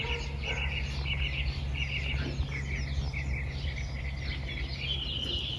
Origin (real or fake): real